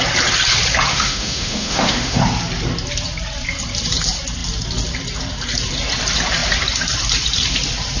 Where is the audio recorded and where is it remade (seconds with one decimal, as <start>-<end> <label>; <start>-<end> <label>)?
0.0-0.9 recorded; 0.9-2.2 remade; 2.2-8.0 recorded